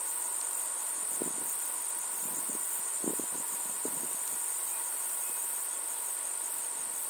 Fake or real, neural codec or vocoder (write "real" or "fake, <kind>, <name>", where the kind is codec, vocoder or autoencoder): fake, vocoder, BigVGAN v2